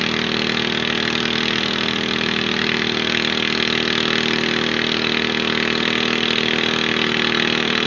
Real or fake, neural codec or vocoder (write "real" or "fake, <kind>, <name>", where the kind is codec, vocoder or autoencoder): real